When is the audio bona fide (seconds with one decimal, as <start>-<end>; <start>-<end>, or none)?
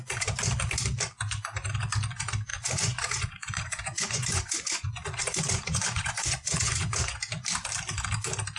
0.0-2.5; 7.2-8.6